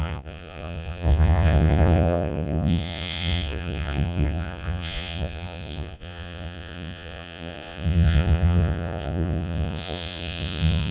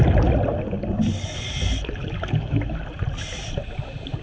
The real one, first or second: second